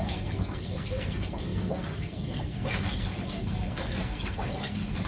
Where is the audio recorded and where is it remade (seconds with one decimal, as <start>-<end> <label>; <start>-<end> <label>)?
0.0-5.1 remade

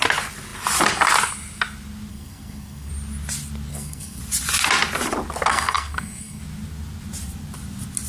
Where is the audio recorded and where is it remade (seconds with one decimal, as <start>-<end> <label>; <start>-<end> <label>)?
0.0-2.1 recorded; 2.1-2.9 remade; 2.9-3.7 recorded; 3.7-4.2 remade; 4.2-5.5 recorded; 5.5-6.4 remade; 6.4-8.1 recorded

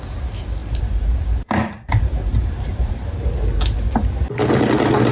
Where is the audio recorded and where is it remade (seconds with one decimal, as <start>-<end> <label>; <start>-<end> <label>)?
0.0-0.6 recorded; 0.6-3.0 remade; 3.0-5.1 recorded

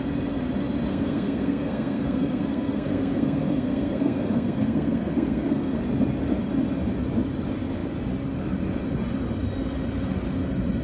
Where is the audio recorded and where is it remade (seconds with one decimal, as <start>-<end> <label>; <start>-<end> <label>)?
0.0-0.9 recorded; 0.9-5.8 remade; 5.8-10.8 recorded